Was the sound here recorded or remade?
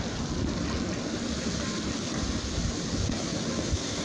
recorded